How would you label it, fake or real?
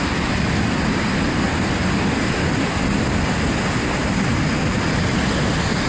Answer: real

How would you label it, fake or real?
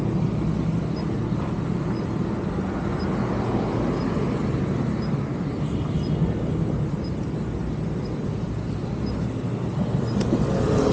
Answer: real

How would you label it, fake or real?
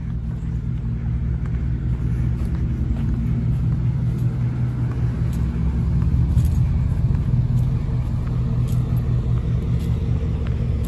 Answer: real